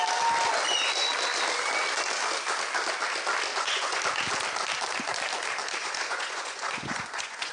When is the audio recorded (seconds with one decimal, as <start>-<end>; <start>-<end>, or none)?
0.0-3.5; 4.0-5.8